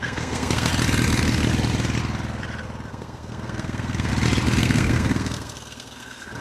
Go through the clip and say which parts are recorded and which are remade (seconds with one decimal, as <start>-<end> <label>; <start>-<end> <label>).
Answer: 0.0-0.7 remade; 0.7-2.9 recorded; 2.9-4.1 remade; 4.1-4.6 recorded; 4.6-6.4 remade